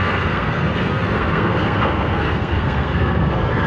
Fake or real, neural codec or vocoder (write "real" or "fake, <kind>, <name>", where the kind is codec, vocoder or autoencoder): fake, codec, SNAC